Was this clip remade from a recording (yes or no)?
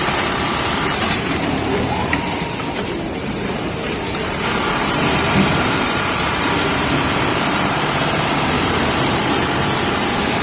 yes